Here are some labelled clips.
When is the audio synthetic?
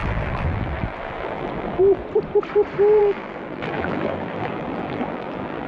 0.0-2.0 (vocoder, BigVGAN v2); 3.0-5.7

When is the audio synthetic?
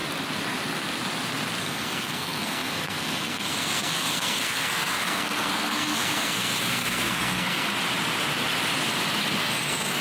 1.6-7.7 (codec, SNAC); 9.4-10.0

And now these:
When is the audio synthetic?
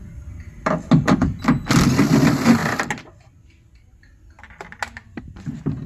none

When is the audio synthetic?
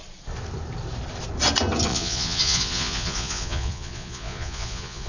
1.9-5.1 (vocoder, Vocos)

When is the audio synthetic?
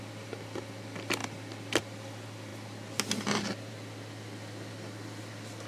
none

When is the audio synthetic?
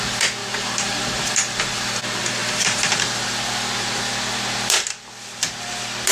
0.4-2.0 (vocoder, BigVGAN v2); 2.4-3.0